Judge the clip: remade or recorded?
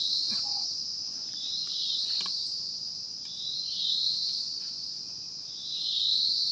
remade